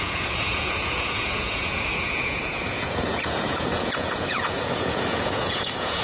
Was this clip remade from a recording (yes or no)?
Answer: yes